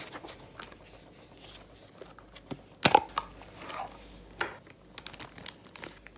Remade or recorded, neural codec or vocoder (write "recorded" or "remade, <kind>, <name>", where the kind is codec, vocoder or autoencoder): recorded